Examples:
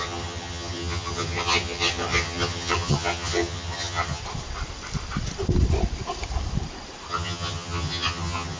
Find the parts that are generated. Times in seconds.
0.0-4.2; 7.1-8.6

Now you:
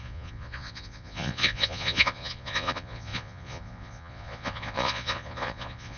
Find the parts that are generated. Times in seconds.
0.0-6.0

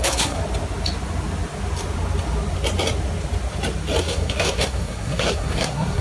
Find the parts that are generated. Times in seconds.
0.0-0.4; 4.0-6.0

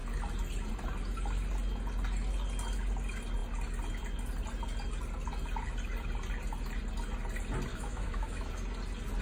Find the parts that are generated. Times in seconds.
7.7-8.5

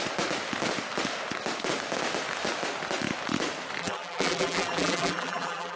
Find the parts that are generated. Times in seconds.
3.8-5.8

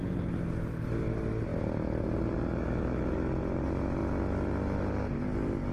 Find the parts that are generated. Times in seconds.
none

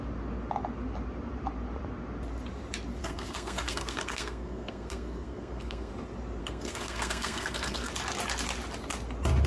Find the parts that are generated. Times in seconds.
3.0-5.9; 6.4-7.9

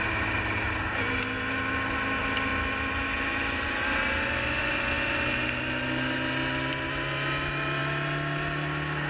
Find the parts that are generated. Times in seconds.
none